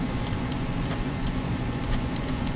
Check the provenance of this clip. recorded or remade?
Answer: remade